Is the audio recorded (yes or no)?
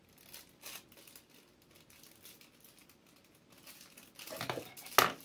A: yes